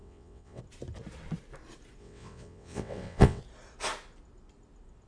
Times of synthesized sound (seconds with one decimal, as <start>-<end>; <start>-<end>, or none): 0.0-0.6; 2.0-3.4